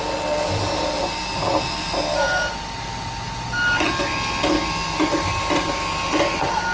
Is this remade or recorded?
recorded